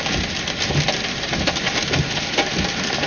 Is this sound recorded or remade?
recorded